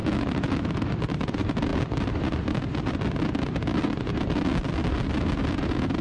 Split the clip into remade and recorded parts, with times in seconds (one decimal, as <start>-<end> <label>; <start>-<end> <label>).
0.0-1.0 remade; 1.0-6.0 recorded